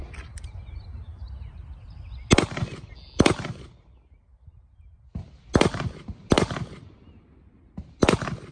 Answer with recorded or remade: recorded